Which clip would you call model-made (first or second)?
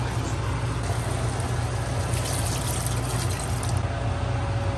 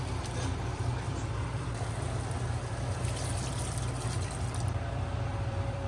second